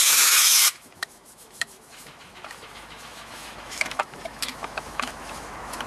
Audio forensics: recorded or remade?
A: remade